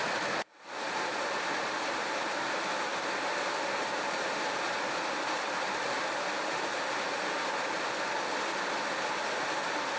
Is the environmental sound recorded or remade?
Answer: recorded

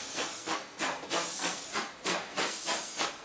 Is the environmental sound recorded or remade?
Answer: remade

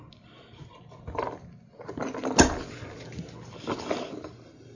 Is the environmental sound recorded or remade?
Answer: recorded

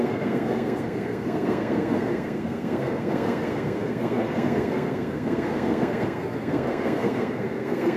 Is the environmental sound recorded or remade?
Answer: remade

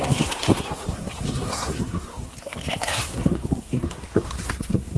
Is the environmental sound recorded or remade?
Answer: remade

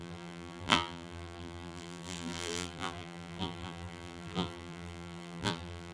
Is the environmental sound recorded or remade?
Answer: remade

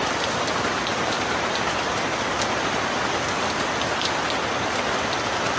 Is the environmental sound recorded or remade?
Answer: remade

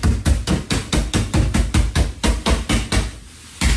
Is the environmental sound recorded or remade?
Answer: recorded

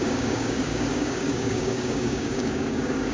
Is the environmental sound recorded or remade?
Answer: remade